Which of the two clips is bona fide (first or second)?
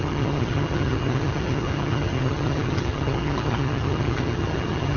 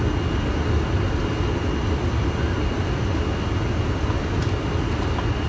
second